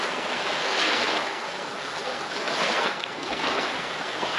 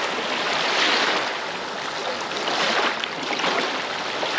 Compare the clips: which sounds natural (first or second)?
second